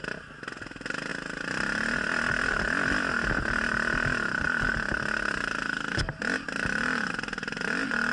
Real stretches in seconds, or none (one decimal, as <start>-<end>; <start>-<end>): 0.0-8.1